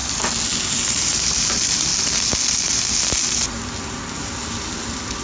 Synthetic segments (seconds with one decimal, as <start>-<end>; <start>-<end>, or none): 0.7-1.9